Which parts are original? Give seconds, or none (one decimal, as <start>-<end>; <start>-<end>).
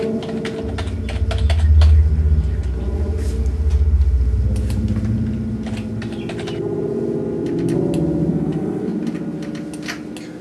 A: 0.0-8.3; 8.9-10.4